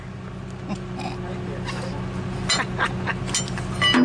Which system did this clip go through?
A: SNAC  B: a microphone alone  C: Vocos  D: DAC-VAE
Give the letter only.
B